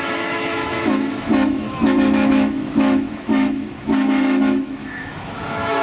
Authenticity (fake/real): fake